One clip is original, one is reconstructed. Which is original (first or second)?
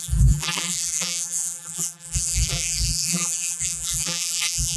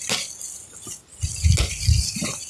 second